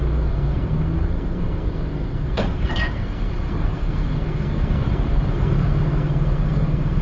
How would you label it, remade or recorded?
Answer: remade